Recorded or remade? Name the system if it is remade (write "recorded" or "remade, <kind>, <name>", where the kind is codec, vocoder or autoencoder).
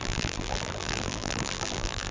remade, vocoder, BigVGAN v2